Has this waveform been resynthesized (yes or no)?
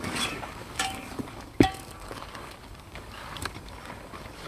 yes